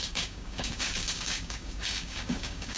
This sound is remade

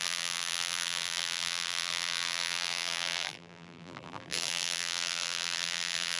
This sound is remade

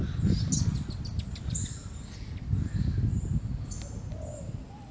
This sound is recorded